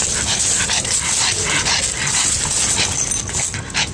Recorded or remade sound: recorded